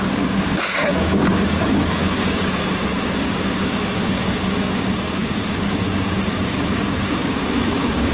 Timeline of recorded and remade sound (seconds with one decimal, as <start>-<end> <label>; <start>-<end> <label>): 0.0-8.1 remade